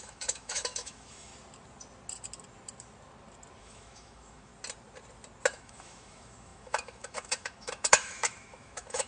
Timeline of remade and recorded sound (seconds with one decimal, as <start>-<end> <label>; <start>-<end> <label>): 0.0-1.3 remade; 1.3-3.6 recorded; 3.6-4.5 remade; 4.5-5.5 recorded; 5.5-9.1 remade